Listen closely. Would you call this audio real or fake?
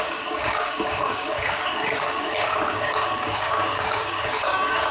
fake